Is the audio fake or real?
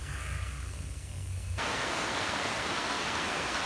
fake